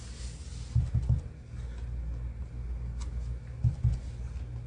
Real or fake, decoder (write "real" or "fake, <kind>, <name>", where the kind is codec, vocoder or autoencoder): real